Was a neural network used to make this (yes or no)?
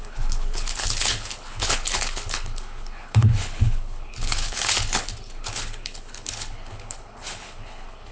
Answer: yes